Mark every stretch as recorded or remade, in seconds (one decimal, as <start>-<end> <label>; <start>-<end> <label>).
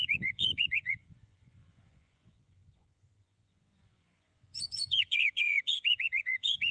0.0-6.7 remade